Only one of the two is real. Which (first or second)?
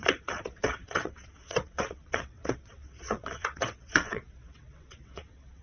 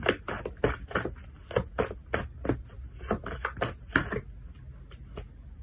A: second